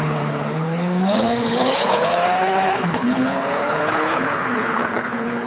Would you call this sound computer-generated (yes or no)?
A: yes